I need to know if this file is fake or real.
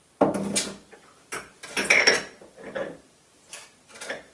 real